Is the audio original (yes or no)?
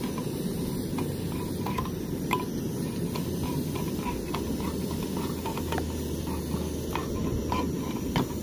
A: yes